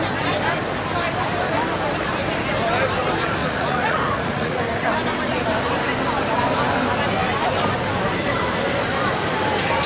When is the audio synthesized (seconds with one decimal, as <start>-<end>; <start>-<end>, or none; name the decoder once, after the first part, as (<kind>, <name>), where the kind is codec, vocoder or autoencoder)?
3.4-4.6 (vocoder, Vocos)